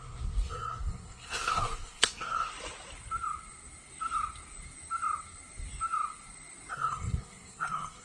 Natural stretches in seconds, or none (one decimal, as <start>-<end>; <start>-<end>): 2.5-6.7